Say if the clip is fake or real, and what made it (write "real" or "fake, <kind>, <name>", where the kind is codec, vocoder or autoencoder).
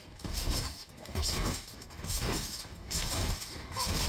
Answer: fake, codec, DAC